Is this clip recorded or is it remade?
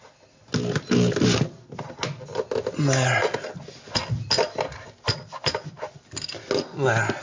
recorded